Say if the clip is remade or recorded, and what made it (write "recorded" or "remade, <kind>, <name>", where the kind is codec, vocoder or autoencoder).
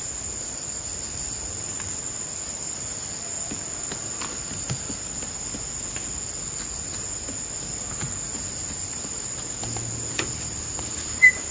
recorded